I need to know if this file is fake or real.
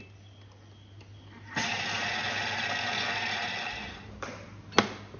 real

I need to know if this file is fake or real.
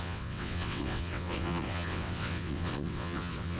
fake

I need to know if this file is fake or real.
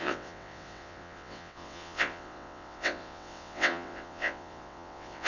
fake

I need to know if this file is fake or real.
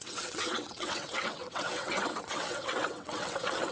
fake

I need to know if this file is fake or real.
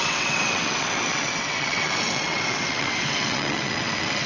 fake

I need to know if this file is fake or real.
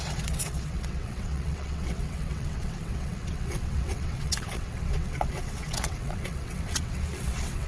fake